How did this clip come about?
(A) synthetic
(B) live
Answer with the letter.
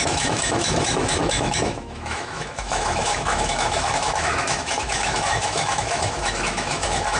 A